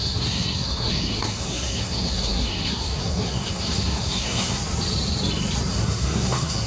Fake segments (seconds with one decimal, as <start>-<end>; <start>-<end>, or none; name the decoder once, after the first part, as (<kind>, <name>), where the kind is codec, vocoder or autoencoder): 0.0-4.6 (codec, SNAC); 5.7-6.7